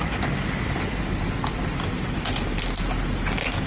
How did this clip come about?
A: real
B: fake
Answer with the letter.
A